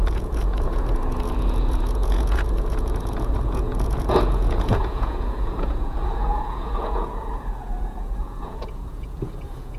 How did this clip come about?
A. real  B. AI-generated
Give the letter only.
B